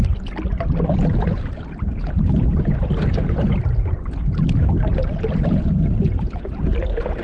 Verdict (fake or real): real